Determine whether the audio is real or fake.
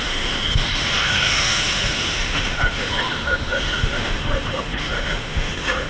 fake